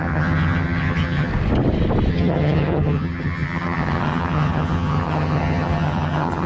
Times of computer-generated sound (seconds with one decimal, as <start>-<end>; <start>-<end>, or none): 0.0-1.3; 2.1-6.5